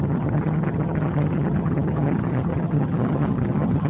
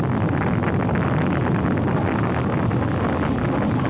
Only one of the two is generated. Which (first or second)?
first